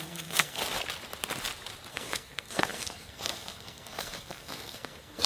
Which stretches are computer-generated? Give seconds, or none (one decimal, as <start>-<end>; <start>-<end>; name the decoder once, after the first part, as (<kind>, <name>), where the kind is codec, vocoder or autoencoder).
0.0-0.6 (codec, SNAC); 1.9-5.3